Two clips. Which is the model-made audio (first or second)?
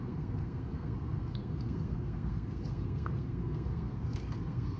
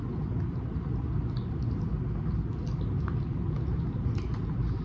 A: first